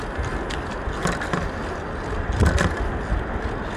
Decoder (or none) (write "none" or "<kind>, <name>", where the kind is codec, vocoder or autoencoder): none